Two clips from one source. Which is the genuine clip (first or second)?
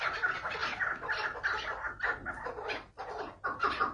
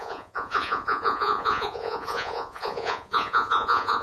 first